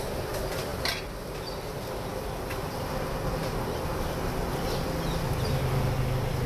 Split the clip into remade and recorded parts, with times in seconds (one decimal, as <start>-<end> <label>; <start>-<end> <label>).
0.0-6.5 recorded

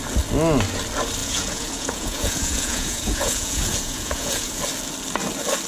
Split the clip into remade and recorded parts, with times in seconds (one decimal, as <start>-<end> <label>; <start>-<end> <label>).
0.0-1.2 recorded; 1.2-4.6 remade; 4.6-5.7 recorded